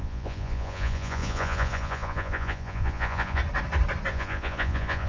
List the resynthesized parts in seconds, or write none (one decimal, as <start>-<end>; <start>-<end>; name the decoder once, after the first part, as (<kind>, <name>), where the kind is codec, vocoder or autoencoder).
0.0-3.4 (vocoder, Vocos); 4.1-5.1